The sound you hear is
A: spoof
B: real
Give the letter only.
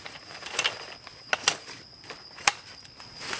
B